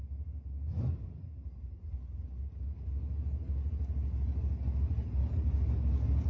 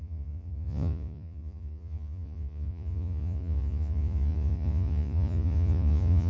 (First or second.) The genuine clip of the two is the first